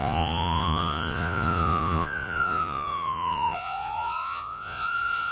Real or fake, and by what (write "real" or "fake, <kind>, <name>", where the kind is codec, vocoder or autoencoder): fake, vocoder, Vocos